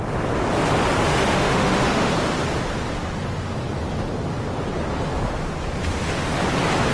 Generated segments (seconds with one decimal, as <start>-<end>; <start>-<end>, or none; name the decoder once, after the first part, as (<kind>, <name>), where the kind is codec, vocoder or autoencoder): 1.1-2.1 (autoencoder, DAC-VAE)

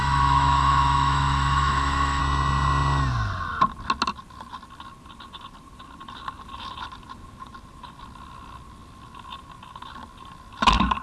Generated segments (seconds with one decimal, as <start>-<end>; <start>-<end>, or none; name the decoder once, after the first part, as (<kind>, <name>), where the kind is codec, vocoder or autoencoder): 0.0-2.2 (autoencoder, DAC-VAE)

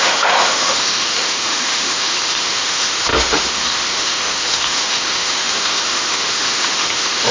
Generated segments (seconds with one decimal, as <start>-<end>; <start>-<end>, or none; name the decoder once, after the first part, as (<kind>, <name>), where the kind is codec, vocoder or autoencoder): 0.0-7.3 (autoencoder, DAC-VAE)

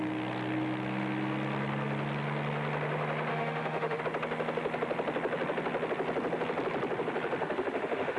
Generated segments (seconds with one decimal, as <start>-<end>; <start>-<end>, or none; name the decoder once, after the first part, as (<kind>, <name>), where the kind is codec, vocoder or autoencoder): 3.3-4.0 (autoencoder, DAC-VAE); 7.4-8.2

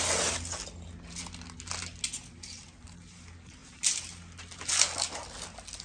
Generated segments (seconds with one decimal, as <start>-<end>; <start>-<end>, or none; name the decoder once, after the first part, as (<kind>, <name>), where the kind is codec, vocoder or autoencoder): none

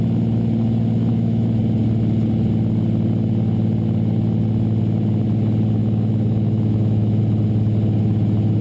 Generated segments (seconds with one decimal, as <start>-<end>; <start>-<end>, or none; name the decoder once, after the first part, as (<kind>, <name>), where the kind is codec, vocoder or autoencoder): 1.1-1.6 (autoencoder, DAC-VAE); 5.8-7.2

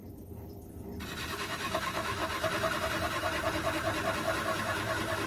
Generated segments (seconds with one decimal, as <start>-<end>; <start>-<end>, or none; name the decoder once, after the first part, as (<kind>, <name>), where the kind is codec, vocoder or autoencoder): 1.4-2.2 (autoencoder, DAC-VAE)